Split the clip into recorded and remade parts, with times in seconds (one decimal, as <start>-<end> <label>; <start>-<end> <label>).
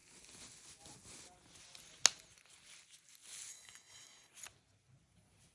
0.0-3.5 recorded; 3.5-4.3 remade; 4.3-5.5 recorded